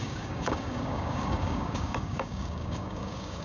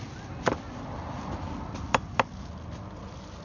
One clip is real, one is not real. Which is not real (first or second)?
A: first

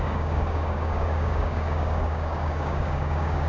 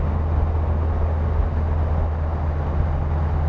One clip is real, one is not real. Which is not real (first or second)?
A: first